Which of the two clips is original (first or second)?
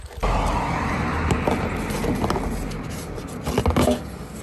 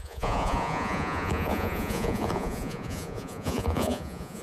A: first